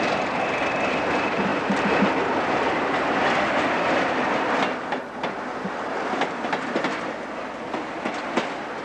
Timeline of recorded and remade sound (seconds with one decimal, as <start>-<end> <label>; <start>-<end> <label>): 0.0-8.8 recorded